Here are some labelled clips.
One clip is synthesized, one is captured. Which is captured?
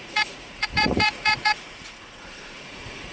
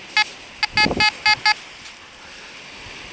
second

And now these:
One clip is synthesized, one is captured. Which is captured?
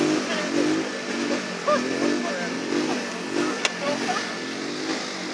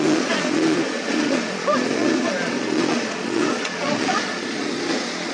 first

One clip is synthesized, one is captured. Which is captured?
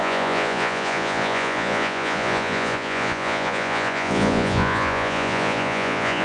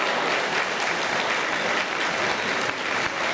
second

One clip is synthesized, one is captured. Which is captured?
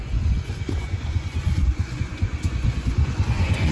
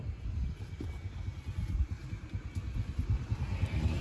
second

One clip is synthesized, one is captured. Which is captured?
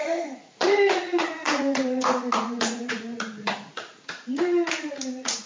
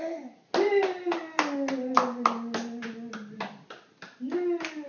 second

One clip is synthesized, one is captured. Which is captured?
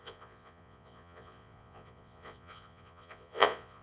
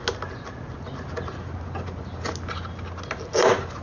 second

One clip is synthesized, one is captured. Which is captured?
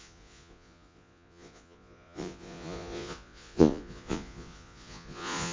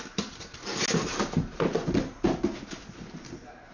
second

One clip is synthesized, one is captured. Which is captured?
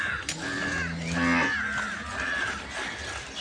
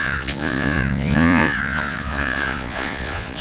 first